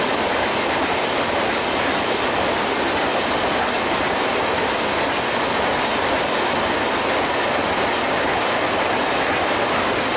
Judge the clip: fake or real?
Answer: real